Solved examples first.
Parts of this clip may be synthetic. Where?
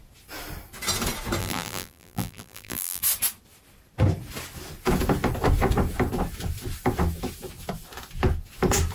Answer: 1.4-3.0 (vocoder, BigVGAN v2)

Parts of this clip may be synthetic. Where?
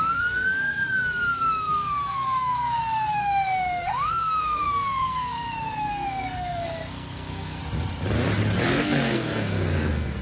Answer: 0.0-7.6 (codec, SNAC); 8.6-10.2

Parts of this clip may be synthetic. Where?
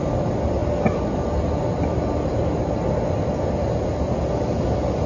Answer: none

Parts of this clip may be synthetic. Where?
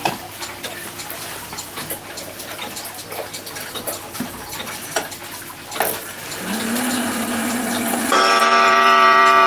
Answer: 3.3-5.2 (vocoder, BigVGAN v2); 7.6-9.5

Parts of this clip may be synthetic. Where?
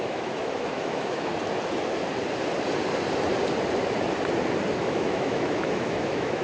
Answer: 0.0-1.3 (autoencoder, DAC-VAE); 4.8-6.4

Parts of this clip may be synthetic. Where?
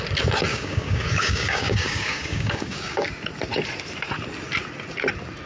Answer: 0.5-3.1 (codec, DAC)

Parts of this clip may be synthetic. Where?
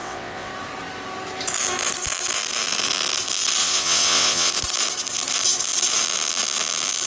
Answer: 0.0-0.5 (vocoder, WaveNeXt); 3.6-4.5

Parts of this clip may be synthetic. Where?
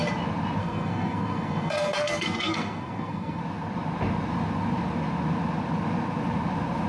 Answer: 0.6-3.4 (codec, SNAC)